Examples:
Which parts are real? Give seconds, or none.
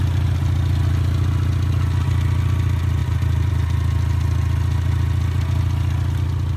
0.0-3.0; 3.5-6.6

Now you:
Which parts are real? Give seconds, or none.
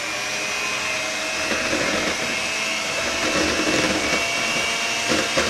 0.0-2.4; 3.0-5.5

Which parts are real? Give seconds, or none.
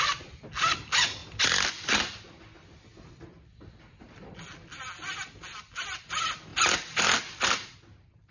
0.0-8.3